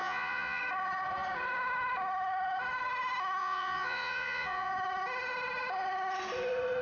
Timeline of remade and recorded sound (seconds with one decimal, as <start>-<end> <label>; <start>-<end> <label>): 0.0-0.6 remade; 0.6-3.4 recorded; 3.4-4.7 remade; 4.7-6.8 recorded